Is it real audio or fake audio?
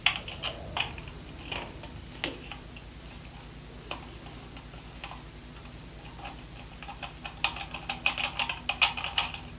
real